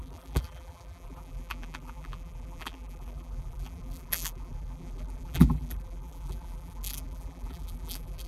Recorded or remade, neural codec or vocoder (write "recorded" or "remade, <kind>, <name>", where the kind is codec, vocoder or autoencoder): remade, vocoder, BigVGAN v2